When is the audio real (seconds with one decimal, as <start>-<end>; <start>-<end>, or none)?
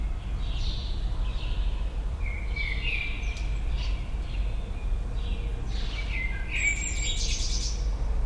0.0-0.8; 4.0-8.3